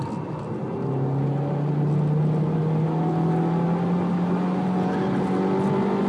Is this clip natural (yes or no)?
yes